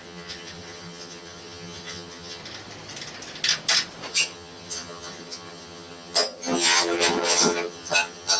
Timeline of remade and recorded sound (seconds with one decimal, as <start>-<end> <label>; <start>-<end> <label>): 0.0-2.4 remade; 2.4-4.1 recorded; 4.1-8.4 remade